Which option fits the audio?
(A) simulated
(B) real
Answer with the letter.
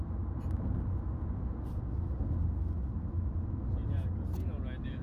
B